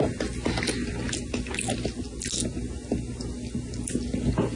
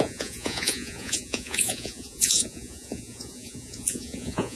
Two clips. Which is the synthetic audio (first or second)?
second